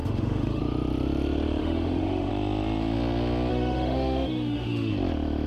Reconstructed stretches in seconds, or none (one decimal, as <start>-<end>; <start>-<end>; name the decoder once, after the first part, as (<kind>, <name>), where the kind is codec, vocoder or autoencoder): 0.0-0.6 (autoencoder, DAC-VAE); 1.6-2.3; 3.5-4.9